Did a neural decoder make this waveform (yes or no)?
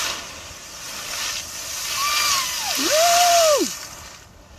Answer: no